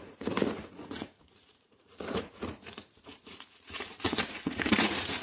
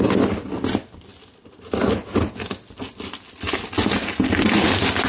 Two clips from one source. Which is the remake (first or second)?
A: first